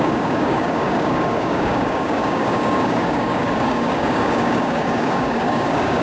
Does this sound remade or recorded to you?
remade